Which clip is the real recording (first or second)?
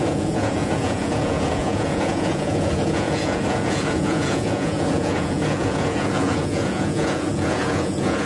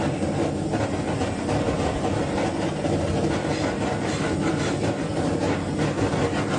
second